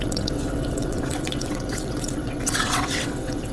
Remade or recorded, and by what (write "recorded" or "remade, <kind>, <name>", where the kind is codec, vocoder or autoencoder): remade, vocoder, WaveNeXt